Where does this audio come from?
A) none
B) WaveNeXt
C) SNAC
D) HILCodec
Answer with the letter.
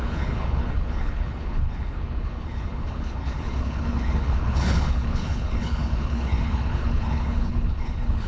D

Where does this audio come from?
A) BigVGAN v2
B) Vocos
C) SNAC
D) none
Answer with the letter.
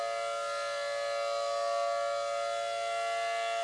D